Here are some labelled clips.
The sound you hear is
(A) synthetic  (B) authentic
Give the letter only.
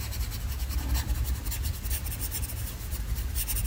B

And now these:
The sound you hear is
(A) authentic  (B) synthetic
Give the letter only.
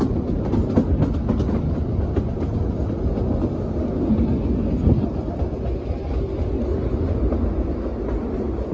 A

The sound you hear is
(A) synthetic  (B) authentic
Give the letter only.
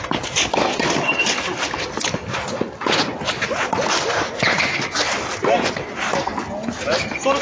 B